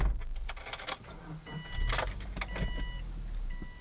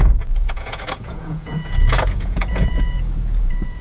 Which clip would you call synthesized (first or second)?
second